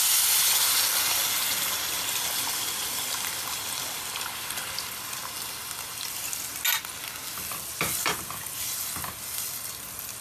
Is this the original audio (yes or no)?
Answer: yes